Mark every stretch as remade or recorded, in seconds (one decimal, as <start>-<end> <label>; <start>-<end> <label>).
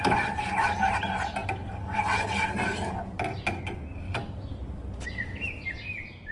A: 0.0-6.3 recorded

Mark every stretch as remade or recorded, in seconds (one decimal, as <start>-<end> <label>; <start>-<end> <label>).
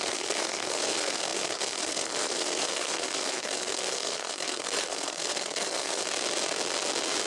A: 0.0-6.0 remade; 6.0-7.3 recorded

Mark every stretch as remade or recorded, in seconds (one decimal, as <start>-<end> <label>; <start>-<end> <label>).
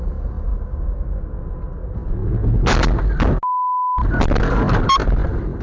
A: 0.0-5.6 recorded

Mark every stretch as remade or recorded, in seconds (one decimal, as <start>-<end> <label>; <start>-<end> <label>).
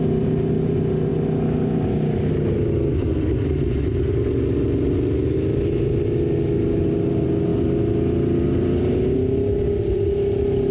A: 0.0-10.7 recorded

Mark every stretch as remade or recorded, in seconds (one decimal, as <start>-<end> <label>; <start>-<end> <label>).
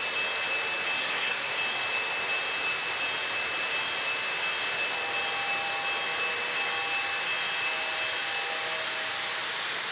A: 0.0-1.0 recorded; 1.0-1.5 remade; 1.5-9.9 recorded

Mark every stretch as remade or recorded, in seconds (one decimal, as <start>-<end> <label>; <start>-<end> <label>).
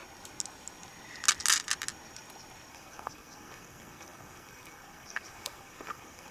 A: 0.0-2.7 recorded; 2.7-6.3 remade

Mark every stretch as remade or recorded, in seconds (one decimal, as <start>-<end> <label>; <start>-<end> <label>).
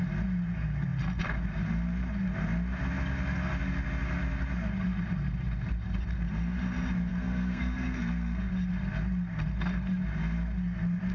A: 0.0-7.1 recorded; 7.1-8.5 remade; 8.5-11.1 recorded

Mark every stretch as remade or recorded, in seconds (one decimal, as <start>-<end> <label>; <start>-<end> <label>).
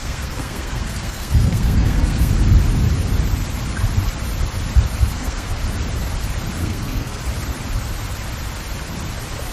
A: 0.0-2.3 remade; 2.3-5.1 recorded; 5.1-5.6 remade; 5.6-6.6 recorded; 6.6-7.2 remade; 7.2-9.5 recorded